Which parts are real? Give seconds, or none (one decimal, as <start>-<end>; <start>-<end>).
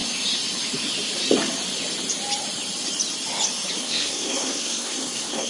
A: 0.0-3.8